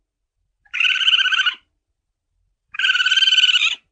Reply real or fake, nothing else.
fake